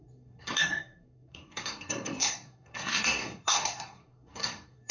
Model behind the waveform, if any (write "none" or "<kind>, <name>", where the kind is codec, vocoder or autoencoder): codec, SNAC